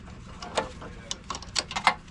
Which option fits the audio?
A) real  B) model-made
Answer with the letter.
A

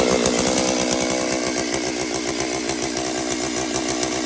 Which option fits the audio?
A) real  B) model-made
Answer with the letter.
A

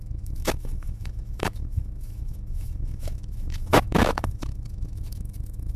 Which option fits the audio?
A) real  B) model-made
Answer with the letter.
B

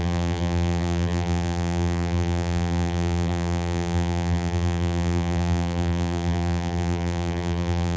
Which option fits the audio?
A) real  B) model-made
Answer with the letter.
B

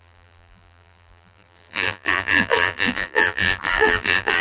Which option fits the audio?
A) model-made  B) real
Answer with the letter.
A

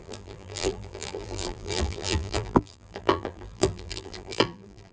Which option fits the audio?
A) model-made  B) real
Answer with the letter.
A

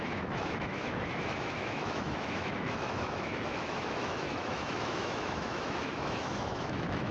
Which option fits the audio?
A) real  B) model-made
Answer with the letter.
B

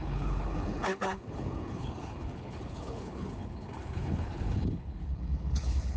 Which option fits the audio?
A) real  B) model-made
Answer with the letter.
B